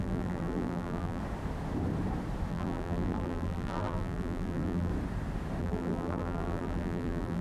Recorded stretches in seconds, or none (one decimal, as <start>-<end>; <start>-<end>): 1.2-2.5; 4.9-5.6